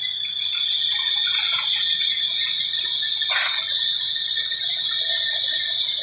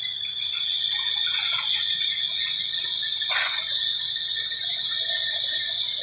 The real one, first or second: first